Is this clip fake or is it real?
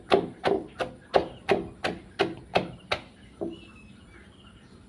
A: real